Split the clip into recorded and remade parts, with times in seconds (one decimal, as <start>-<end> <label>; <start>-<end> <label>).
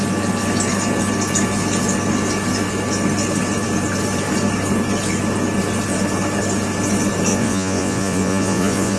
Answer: 0.0-7.3 recorded; 7.3-9.0 remade